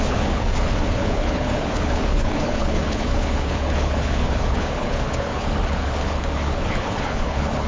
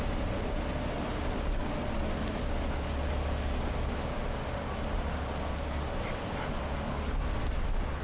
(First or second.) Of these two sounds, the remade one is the first